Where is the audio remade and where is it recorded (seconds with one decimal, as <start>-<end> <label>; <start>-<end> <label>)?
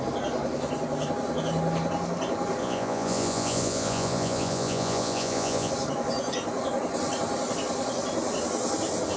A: 0.0-2.6 recorded; 2.6-5.7 remade; 5.7-9.2 recorded